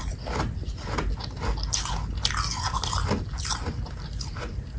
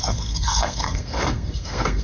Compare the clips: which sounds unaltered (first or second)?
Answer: first